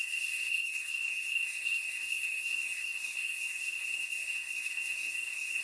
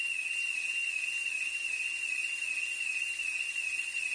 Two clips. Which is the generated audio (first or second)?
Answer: first